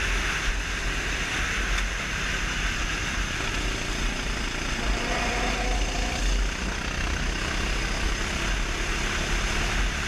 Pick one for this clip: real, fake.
real